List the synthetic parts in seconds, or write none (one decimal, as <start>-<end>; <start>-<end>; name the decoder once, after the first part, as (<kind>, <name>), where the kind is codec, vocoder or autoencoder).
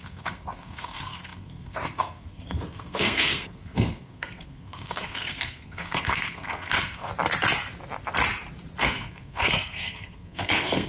0.0-7.1 (codec, SNAC); 8.8-10.9